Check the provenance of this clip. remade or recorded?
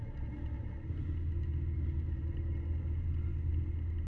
recorded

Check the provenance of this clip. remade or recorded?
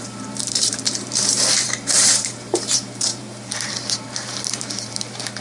remade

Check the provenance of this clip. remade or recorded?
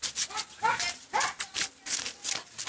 recorded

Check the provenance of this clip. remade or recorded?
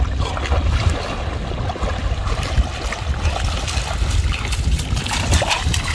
recorded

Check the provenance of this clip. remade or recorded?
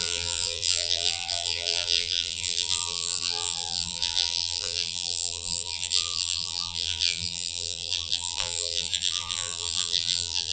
remade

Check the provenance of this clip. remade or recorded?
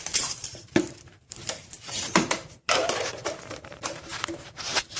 remade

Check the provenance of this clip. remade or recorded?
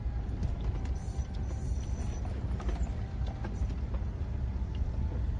recorded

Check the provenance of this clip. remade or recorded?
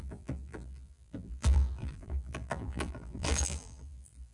remade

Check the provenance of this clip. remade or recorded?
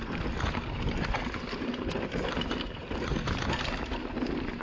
recorded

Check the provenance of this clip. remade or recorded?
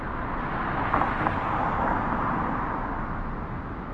recorded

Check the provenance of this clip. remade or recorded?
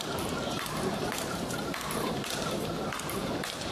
remade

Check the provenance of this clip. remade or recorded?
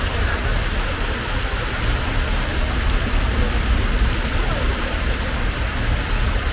recorded